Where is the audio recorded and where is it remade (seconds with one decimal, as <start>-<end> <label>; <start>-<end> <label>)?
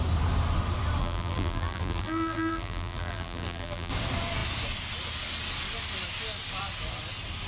0.0-1.0 recorded; 1.0-3.9 remade; 3.9-7.5 recorded